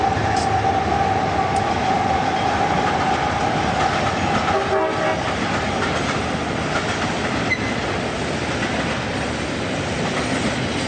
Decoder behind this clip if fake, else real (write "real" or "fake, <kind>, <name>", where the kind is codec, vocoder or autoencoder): real